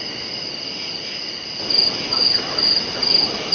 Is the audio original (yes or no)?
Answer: yes